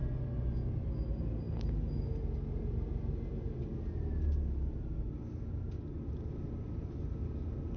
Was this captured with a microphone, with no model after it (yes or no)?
yes